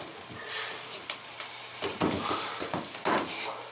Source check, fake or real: real